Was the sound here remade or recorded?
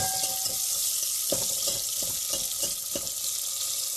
recorded